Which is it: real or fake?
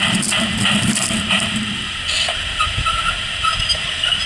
fake